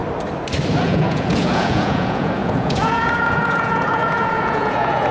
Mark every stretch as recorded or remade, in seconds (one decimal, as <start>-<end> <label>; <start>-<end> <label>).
0.0-0.8 recorded; 0.8-5.1 remade